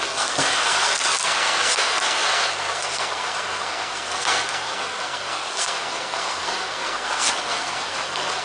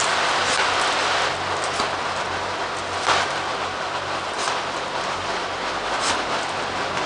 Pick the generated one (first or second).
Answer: first